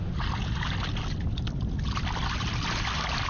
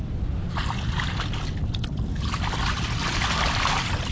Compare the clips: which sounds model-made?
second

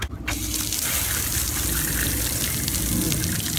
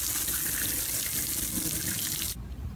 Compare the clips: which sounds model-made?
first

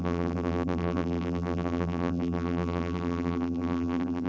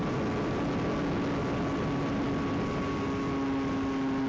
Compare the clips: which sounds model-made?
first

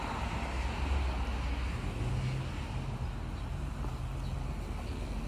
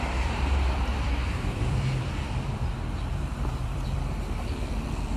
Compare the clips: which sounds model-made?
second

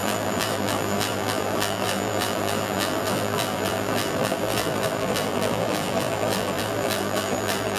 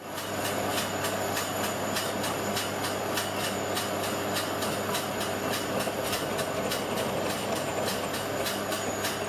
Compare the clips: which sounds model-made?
first